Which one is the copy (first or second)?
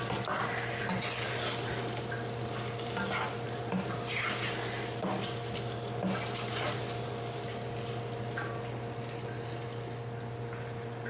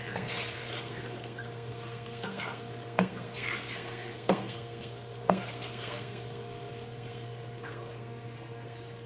second